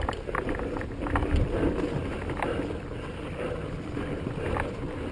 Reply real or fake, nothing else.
real